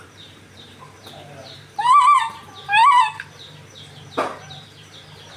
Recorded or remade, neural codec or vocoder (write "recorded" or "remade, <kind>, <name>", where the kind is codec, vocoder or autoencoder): remade, vocoder, BigVGAN v2